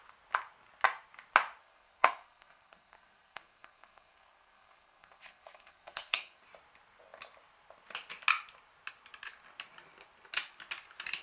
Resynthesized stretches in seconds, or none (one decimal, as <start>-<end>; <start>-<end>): 1.6-6.4